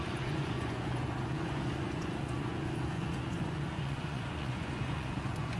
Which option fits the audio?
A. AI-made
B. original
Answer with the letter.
A